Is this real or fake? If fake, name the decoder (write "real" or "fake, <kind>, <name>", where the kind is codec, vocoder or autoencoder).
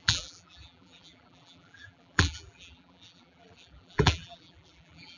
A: fake, vocoder, BigVGAN v2